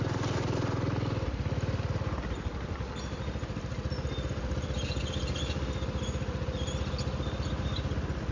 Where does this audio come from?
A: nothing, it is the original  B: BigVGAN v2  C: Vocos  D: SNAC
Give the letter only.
A